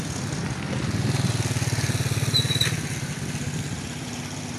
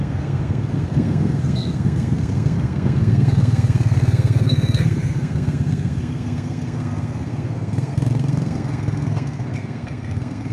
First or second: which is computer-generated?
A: second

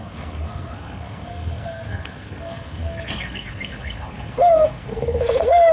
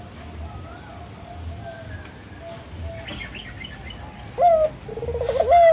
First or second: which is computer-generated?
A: first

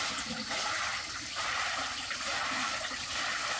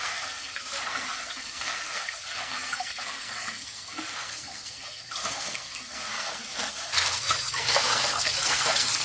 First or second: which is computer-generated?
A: second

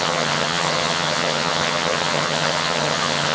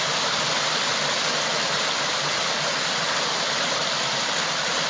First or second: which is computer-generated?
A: first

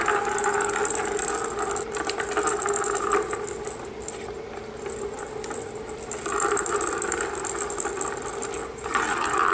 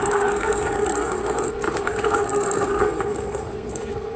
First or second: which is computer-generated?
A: second